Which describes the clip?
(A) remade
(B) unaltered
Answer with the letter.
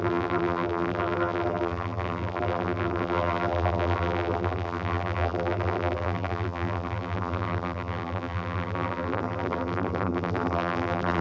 A